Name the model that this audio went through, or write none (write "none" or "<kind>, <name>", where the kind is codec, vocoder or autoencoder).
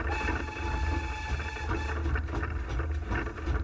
none